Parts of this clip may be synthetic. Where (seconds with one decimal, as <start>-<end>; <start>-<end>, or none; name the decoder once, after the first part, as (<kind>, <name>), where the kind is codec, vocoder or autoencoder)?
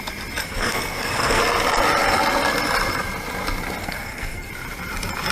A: 0.4-1.4 (codec, SNAC); 3.8-4.5